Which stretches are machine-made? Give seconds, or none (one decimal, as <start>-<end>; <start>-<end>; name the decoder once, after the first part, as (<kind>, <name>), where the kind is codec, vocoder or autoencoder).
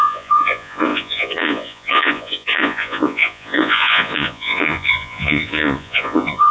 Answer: 0.0-6.5 (vocoder, Vocos)